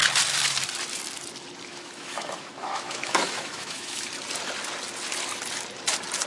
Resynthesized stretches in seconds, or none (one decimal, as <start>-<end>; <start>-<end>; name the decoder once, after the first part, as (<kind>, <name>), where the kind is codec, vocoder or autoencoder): 1.7-4.1 (autoencoder, DAC-VAE)